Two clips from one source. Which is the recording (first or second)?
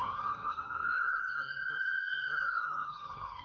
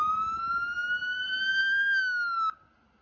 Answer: second